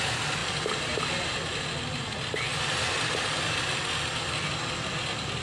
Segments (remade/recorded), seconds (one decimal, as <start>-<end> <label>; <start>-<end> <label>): 0.0-5.4 recorded